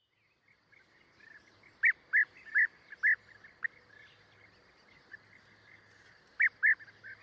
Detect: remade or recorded recorded